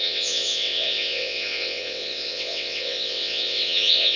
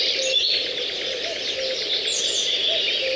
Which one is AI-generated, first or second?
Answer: first